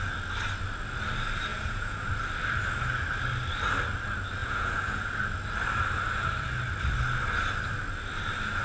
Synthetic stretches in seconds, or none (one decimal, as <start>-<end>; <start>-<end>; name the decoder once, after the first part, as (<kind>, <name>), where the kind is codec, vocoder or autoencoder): 1.5-2.1 (vocoder, Vocos); 4.4-5.1